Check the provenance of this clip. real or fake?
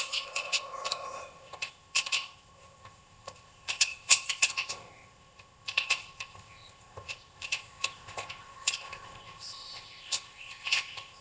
fake